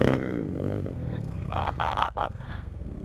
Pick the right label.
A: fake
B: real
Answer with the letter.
A